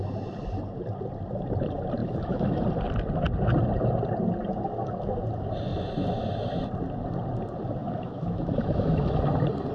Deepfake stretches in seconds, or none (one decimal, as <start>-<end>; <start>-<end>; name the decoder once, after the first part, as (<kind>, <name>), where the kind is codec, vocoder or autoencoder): 2.0-2.6 (autoencoder, DAC-VAE); 7.8-9.2